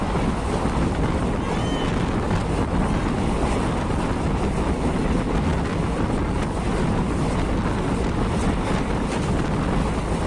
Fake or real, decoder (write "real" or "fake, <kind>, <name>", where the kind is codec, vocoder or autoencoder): real